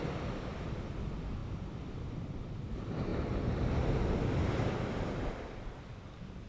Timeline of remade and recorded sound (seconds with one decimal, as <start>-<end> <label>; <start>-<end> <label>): 0.0-6.5 recorded